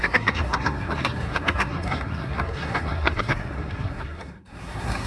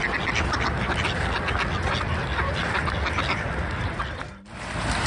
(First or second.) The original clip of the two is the second